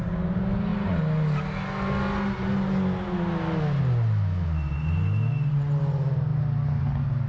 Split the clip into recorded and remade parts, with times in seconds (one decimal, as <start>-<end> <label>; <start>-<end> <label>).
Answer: 0.0-7.3 recorded